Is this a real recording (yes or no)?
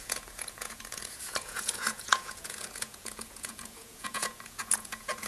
no